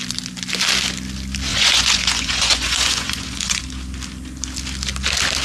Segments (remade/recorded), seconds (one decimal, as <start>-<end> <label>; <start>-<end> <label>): 0.0-1.5 recorded; 1.5-3.6 remade; 3.6-5.4 recorded